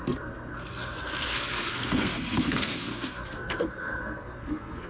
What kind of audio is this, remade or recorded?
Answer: remade